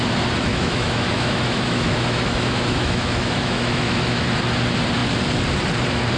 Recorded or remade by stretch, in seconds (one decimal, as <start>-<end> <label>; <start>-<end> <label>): 0.0-0.5 recorded; 0.5-4.2 remade; 4.2-6.2 recorded